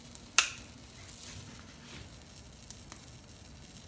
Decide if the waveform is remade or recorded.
recorded